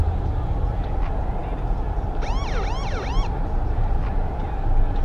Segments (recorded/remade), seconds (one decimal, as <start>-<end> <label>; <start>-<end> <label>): 0.0-0.9 remade; 0.9-5.0 recorded